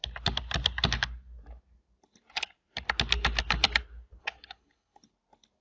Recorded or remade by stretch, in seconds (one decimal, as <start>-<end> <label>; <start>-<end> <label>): 0.0-4.2 recorded; 4.2-5.1 remade; 5.1-5.6 recorded